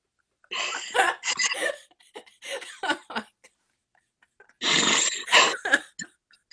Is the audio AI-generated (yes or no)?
no